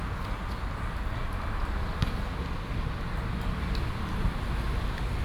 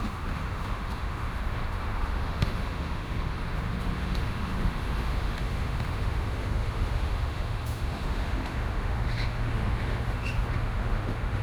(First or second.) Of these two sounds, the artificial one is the second